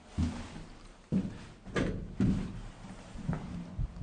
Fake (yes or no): no